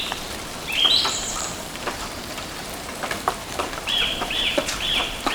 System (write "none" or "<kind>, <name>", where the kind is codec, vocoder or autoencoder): vocoder, BigVGAN v2